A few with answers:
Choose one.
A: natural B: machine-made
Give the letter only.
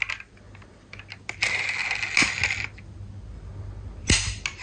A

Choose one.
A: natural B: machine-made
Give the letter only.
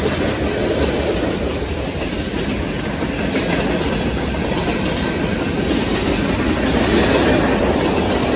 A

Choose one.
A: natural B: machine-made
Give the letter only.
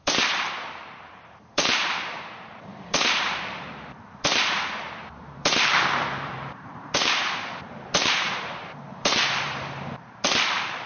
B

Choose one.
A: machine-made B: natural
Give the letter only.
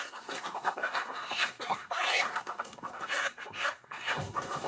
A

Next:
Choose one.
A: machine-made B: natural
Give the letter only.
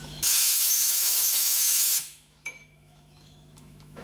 A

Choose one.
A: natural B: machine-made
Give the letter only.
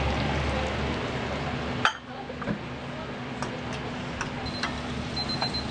A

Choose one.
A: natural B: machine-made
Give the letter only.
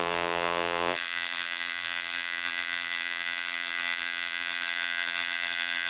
B